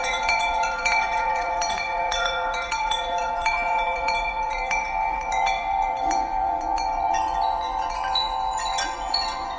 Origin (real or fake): fake